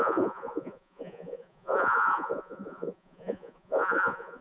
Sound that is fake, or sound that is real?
fake